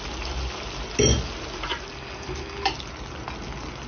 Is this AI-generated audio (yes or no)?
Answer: no